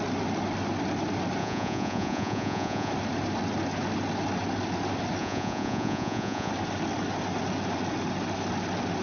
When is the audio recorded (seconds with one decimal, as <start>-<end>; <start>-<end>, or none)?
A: 0.0-1.4; 2.9-5.2; 6.5-9.0